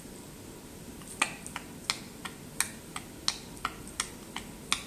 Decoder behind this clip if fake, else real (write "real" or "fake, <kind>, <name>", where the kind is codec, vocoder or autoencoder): real